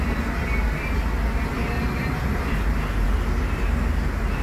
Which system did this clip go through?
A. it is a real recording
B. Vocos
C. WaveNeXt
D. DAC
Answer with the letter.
A